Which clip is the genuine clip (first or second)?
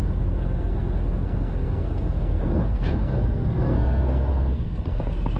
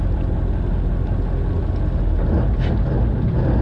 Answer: second